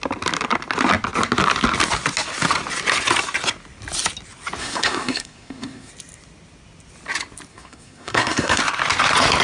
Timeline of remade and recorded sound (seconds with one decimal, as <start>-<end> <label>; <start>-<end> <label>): 0.0-4.6 recorded; 4.6-5.9 remade; 5.9-7.5 recorded; 7.5-8.6 remade; 8.6-9.4 recorded